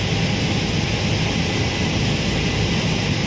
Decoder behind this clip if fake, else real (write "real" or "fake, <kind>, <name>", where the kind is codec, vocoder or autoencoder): real